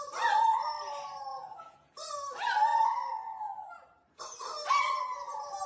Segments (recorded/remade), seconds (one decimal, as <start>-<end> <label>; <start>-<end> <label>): 0.0-1.3 recorded; 1.3-2.1 remade; 2.1-5.7 recorded